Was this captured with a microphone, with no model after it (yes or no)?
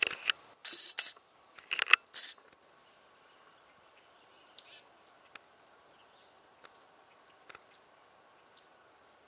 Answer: yes